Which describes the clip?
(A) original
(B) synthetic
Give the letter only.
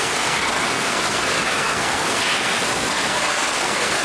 B